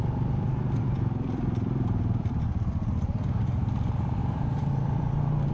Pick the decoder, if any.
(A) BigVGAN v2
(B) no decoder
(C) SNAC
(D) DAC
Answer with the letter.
A